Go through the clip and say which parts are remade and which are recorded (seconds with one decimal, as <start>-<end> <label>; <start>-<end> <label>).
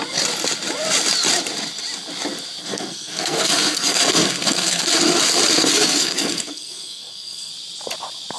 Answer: 0.0-2.6 recorded; 2.6-4.9 remade; 4.9-5.6 recorded; 5.6-7.5 remade; 7.5-8.4 recorded